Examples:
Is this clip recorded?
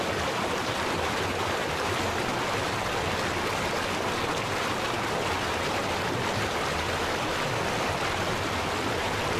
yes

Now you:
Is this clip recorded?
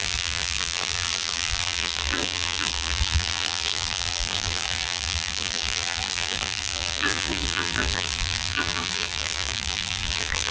no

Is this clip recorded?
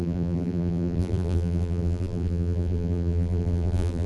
no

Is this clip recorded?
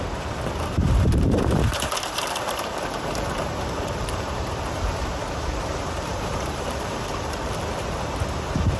no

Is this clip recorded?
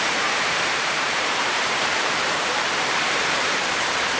no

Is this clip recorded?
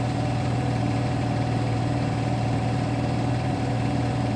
no